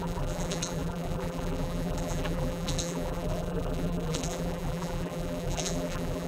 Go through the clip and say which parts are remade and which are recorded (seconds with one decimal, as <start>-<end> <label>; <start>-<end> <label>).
0.0-6.3 remade

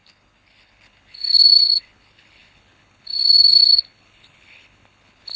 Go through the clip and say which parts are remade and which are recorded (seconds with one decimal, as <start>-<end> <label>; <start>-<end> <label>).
0.0-5.4 remade